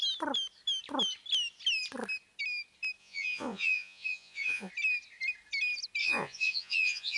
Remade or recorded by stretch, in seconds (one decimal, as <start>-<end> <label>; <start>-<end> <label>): 0.0-3.0 recorded; 3.0-4.7 remade; 4.7-6.0 recorded; 6.0-7.2 remade